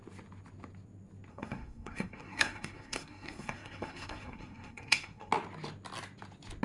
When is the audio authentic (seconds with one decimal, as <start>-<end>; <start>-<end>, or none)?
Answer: 0.0-1.3; 5.3-6.6